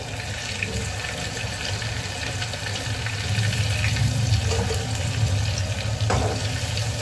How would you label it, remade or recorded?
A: recorded